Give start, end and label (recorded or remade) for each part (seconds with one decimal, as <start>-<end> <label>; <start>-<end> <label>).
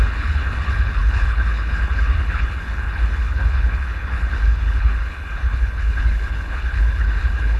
0.0-7.6 remade